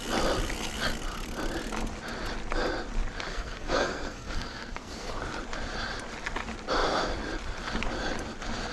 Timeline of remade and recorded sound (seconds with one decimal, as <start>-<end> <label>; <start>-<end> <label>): 0.0-3.3 recorded; 3.3-5.1 remade; 5.1-8.7 recorded